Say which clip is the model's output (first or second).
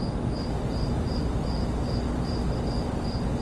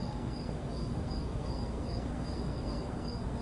second